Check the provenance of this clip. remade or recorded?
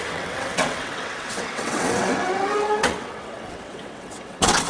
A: remade